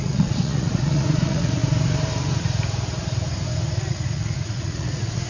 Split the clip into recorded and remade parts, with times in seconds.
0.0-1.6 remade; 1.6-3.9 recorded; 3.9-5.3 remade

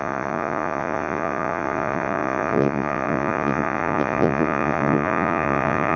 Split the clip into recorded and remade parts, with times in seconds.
0.0-6.0 remade

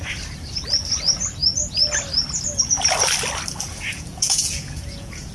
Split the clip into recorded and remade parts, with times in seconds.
0.0-3.9 recorded; 3.9-5.3 remade

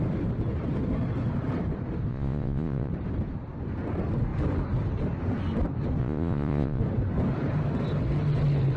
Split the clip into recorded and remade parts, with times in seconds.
0.0-2.1 recorded; 2.1-2.9 remade; 2.9-6.0 recorded; 6.0-6.8 remade; 6.8-8.8 recorded

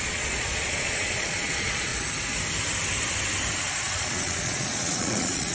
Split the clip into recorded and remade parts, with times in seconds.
0.0-1.9 remade; 1.9-3.7 recorded; 3.7-5.5 remade

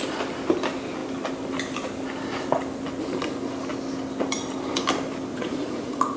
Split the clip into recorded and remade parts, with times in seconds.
0.0-5.3 recorded; 5.3-6.2 remade

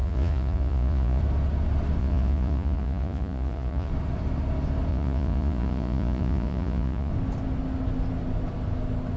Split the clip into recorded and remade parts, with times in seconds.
0.0-1.2 remade; 1.2-2.0 recorded; 2.0-3.9 remade; 3.9-4.9 recorded; 4.9-7.1 remade; 7.1-9.2 recorded

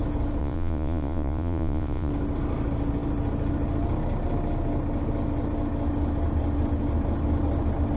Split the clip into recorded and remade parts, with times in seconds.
0.0-0.4 recorded; 0.4-2.1 remade; 2.1-8.0 recorded